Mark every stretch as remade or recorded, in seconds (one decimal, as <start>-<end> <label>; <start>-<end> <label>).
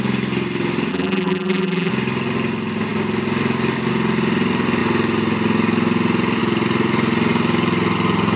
0.0-0.9 recorded; 0.9-1.9 remade; 1.9-8.4 recorded